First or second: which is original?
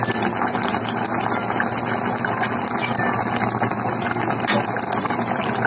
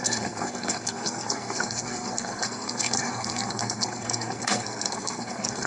first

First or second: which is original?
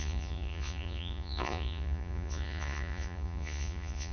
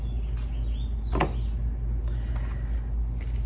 second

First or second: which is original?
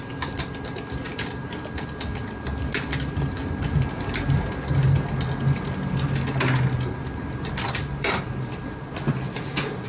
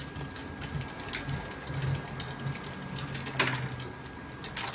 second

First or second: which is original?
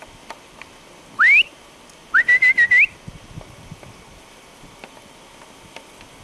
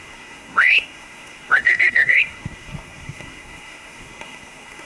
first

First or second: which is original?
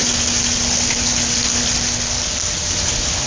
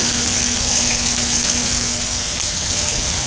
first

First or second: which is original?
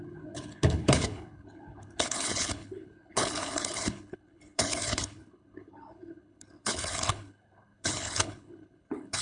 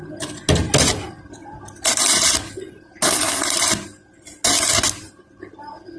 second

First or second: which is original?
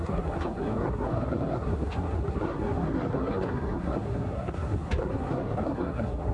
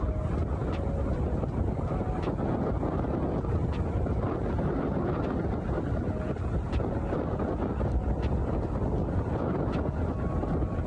second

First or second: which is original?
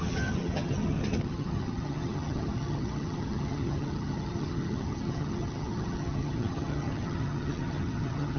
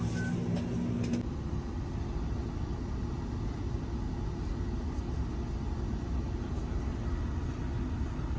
second